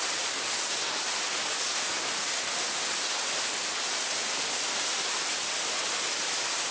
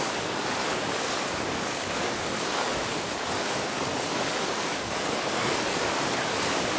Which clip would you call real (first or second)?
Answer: first